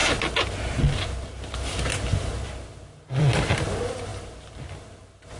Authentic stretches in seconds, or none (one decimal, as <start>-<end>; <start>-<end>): 0.0-5.4